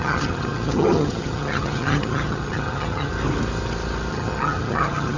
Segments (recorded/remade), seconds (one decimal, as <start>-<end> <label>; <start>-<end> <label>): 0.0-3.1 remade; 3.1-4.1 recorded; 4.1-5.2 remade

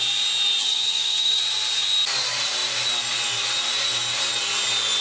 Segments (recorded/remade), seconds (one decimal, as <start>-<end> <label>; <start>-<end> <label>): 0.0-0.6 recorded; 0.6-1.4 remade; 1.4-5.0 recorded

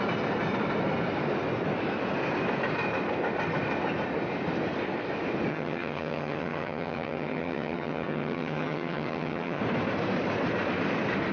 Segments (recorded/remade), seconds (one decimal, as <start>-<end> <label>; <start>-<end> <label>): 0.0-5.5 recorded; 5.5-9.6 remade; 9.6-11.3 recorded

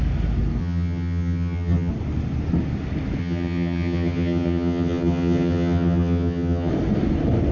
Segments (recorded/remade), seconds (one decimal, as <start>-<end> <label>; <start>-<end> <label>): 0.0-0.6 recorded; 0.6-1.9 remade; 1.9-3.2 recorded; 3.2-6.7 remade; 6.7-7.5 recorded

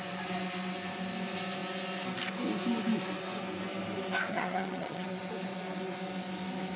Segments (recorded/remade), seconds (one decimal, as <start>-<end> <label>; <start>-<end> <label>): 0.0-4.3 recorded; 4.3-5.2 remade; 5.2-6.8 recorded

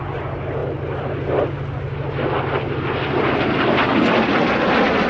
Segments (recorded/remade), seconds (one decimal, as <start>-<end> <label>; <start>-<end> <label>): 0.0-5.1 recorded